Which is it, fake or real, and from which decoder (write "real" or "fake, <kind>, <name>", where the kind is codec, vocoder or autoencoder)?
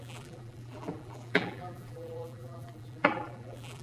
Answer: fake, vocoder, BigVGAN v2